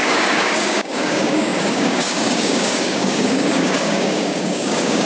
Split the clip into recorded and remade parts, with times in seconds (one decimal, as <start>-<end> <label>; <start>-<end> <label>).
0.0-5.1 remade